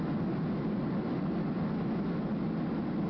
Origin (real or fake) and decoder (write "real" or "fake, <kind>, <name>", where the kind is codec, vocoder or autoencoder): real